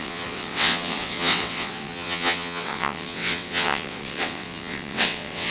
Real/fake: fake